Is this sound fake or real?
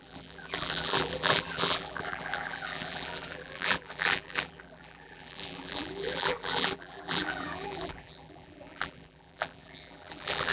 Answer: fake